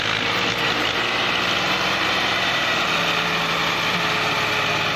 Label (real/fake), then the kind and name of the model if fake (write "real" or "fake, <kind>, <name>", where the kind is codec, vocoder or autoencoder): real